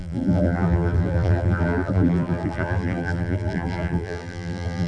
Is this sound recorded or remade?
remade